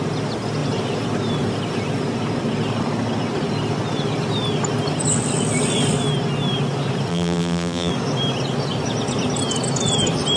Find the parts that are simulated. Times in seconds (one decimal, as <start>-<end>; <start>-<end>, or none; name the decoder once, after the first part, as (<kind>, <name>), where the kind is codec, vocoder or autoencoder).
7.1-7.9 (vocoder, BigVGAN v2)